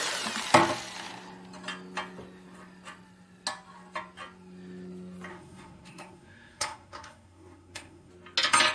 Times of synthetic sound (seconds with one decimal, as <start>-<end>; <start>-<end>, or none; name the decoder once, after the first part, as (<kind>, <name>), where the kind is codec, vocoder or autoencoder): 5.3-8.1 (codec, SNAC)